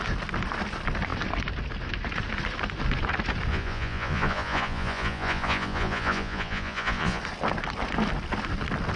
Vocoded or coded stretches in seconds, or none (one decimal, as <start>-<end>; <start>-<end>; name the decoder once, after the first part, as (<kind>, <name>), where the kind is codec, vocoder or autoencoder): 3.5-7.2 (vocoder, Vocos)